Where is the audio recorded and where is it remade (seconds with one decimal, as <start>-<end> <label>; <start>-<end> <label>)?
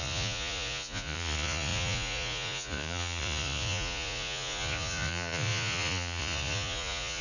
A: 0.0-7.2 remade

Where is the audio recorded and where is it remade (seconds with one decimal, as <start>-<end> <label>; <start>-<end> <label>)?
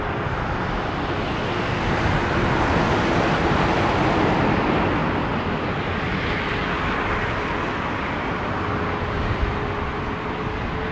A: 0.0-10.9 recorded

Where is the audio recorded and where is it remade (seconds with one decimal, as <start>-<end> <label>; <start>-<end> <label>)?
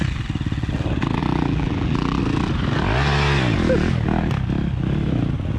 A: 0.0-1.2 recorded; 1.2-2.2 remade; 2.2-5.6 recorded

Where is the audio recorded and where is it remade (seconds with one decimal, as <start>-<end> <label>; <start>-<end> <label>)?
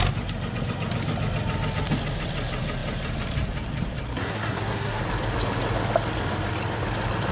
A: 0.0-4.1 recorded; 4.1-5.0 remade; 5.0-7.3 recorded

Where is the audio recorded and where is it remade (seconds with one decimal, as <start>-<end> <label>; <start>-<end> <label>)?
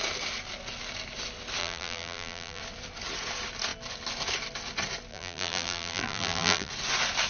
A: 0.0-1.6 recorded; 1.6-2.6 remade; 2.6-5.1 recorded; 5.1-6.7 remade; 6.7-7.3 recorded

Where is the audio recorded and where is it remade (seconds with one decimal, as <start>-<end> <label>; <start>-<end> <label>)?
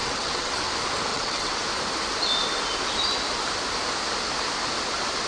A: 0.0-0.6 remade; 0.6-1.1 recorded; 1.1-1.6 remade; 1.6-5.3 recorded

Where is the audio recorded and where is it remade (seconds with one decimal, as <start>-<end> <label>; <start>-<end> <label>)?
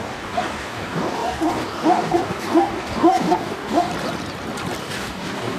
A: 0.0-3.9 remade; 3.9-4.8 recorded; 4.8-5.6 remade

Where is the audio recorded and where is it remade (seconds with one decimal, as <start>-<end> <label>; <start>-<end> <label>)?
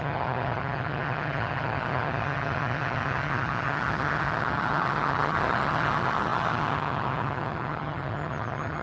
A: 0.0-8.8 remade